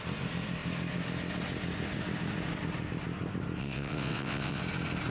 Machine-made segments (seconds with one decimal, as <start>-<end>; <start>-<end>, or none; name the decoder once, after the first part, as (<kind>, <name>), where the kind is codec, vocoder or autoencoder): 3.6-4.6 (vocoder, WaveNeXt)